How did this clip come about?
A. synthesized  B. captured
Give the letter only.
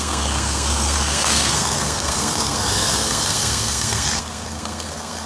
A